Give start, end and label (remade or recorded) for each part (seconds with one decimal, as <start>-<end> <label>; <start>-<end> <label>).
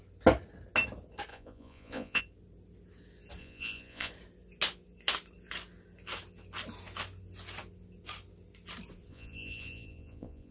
0.0-1.3 recorded; 1.3-2.2 remade; 2.2-3.4 recorded; 3.4-4.1 remade; 4.1-9.1 recorded; 9.1-10.5 remade